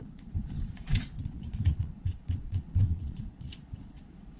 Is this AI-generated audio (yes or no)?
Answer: yes